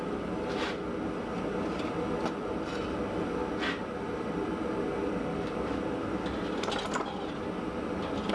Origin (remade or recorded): recorded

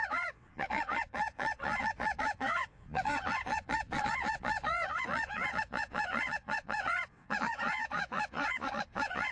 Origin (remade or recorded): remade